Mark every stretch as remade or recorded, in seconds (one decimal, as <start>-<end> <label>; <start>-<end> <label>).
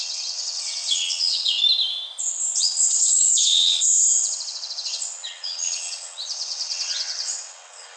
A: 0.0-1.6 remade; 1.6-2.2 recorded; 2.2-8.0 remade